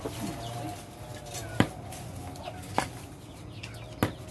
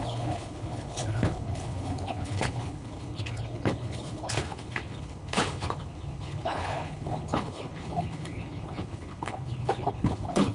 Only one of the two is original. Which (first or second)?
first